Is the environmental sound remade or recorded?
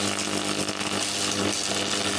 recorded